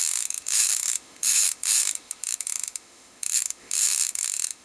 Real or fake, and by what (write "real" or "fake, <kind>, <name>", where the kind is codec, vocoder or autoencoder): fake, autoencoder, DAC-VAE